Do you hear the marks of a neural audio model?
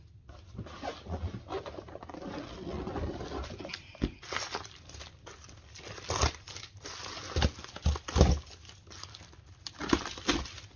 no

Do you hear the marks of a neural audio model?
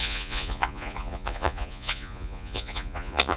yes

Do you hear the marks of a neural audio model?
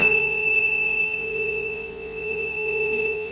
yes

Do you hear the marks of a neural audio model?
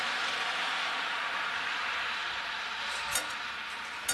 no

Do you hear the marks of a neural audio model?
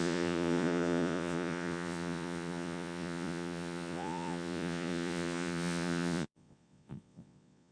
yes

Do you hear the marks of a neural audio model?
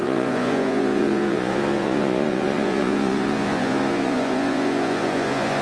yes